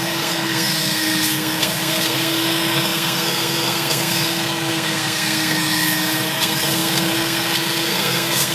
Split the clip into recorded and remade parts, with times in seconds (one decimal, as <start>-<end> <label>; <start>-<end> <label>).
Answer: 0.0-8.5 remade